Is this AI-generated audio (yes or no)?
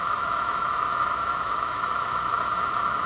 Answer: yes